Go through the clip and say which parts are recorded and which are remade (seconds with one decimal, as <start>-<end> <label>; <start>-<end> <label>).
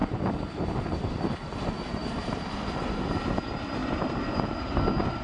0.0-1.5 remade; 1.5-2.0 recorded; 2.0-2.6 remade; 2.6-5.2 recorded